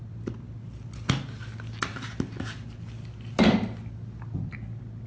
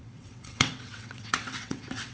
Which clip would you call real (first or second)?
first